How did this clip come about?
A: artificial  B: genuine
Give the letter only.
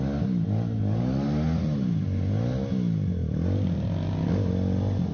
B